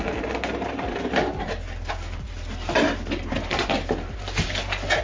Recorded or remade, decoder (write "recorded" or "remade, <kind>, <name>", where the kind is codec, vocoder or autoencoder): recorded